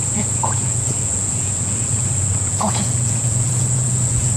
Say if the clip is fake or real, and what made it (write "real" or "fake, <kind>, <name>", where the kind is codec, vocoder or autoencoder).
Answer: fake, vocoder, Vocos